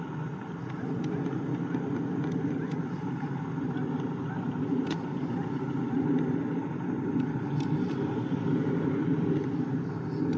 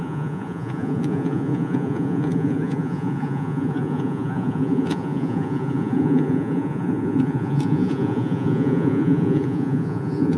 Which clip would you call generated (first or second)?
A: second